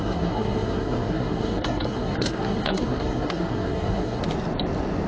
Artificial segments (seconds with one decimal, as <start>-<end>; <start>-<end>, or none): 0.0-4.2